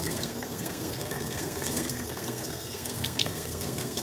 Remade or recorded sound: remade